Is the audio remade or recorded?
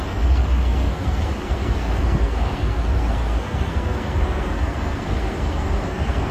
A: remade